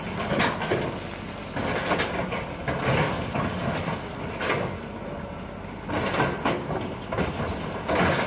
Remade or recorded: recorded